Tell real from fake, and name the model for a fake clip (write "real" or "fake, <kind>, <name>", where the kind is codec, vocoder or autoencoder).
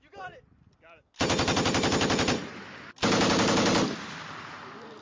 real